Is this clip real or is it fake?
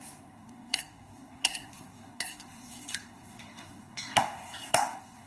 fake